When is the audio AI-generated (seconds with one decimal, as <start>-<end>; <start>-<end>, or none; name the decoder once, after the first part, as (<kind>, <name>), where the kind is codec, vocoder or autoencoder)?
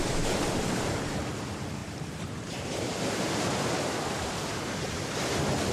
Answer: 1.8-5.0 (vocoder, BigVGAN v2)